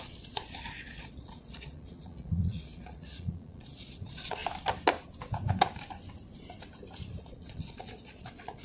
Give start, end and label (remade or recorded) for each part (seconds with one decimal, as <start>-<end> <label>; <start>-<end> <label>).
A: 0.0-4.4 remade; 4.4-7.2 recorded; 7.2-8.6 remade